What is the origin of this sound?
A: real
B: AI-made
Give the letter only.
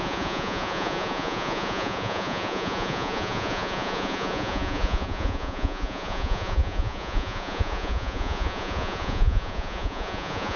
B